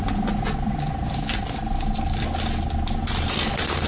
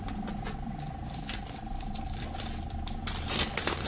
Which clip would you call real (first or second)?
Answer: first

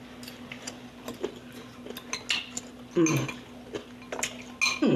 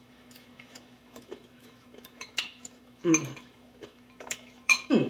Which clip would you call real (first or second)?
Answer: first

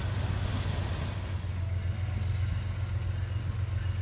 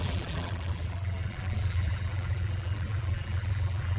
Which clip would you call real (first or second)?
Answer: first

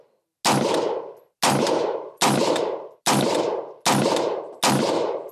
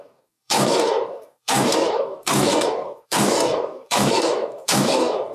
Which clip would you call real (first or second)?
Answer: first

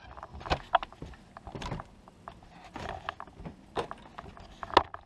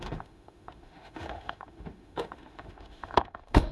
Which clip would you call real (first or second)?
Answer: first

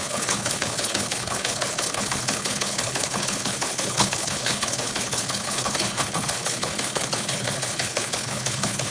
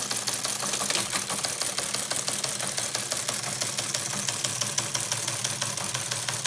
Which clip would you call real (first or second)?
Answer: second